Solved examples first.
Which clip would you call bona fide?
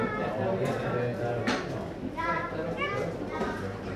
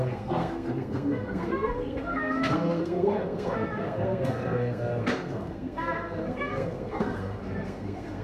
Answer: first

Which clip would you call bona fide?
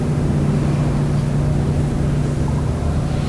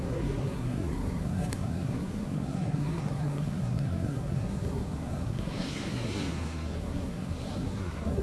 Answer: first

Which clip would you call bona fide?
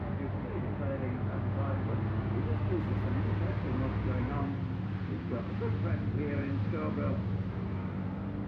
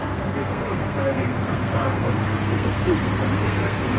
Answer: first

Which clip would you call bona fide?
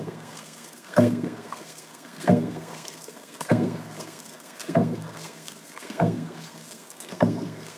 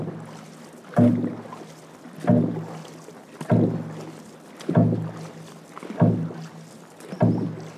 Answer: second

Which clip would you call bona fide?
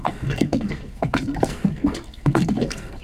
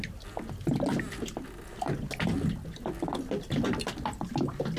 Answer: second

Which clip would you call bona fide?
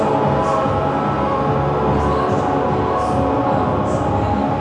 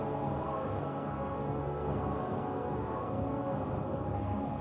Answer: first